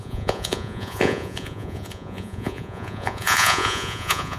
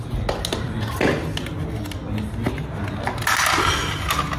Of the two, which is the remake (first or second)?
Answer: first